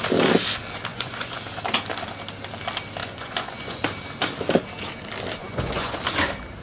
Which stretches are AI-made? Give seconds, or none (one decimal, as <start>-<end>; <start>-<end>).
0.9-1.4; 3.0-3.8; 5.4-6.0